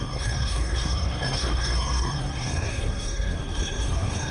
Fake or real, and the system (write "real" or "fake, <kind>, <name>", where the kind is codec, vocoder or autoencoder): fake, codec, SNAC